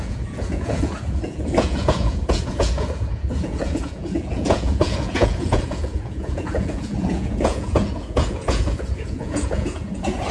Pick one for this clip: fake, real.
fake